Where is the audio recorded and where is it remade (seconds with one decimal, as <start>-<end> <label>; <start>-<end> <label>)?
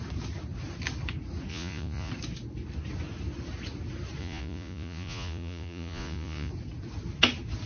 0.0-1.5 recorded; 1.5-2.1 remade; 2.1-4.2 recorded; 4.2-6.5 remade; 6.5-7.7 recorded